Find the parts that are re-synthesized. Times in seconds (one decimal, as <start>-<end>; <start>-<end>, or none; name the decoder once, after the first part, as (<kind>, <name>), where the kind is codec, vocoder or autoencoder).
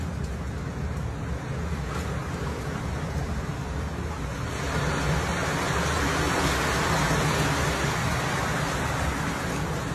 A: none